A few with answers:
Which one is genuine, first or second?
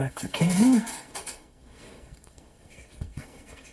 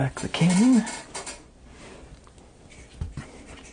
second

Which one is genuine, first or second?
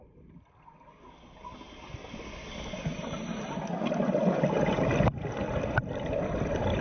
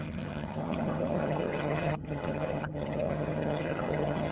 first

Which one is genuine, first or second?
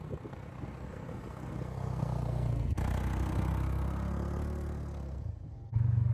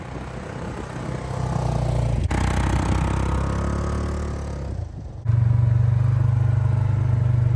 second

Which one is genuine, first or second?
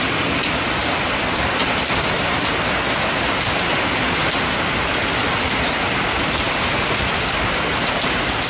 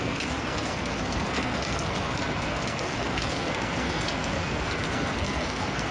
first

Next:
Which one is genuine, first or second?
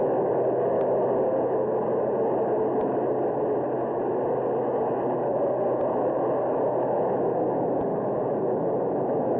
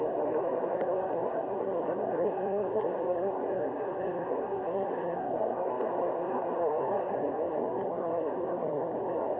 first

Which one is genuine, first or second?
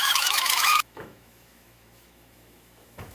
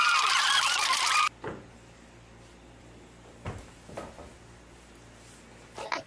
second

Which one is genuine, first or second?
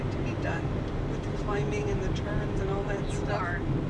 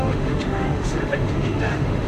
first